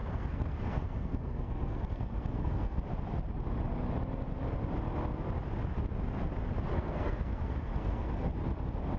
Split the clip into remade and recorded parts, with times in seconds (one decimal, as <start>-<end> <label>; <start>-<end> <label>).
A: 0.0-2.8 remade; 2.8-6.7 recorded; 6.7-8.3 remade; 8.3-9.0 recorded